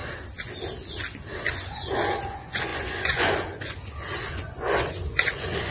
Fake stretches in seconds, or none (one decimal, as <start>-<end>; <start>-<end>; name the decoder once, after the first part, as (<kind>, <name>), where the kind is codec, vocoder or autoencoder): 1.5-5.7 (vocoder, Vocos)